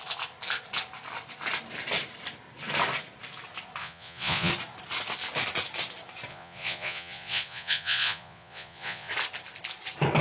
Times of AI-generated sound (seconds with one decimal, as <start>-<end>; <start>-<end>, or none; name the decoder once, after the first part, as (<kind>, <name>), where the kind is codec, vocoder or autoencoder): 3.8-4.5 (vocoder, Vocos); 6.3-9.1